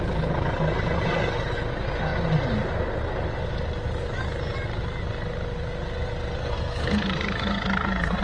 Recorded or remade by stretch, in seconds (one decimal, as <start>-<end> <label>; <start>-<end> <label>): 0.0-6.4 recorded; 6.4-8.2 remade